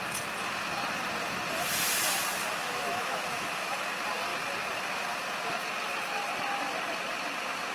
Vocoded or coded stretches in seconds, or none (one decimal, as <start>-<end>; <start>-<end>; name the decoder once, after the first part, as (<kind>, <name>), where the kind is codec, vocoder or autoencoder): 2.6-3.7 (autoencoder, DAC-VAE)